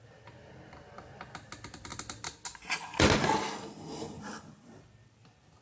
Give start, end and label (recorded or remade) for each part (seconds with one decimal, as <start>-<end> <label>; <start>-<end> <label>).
0.0-5.6 recorded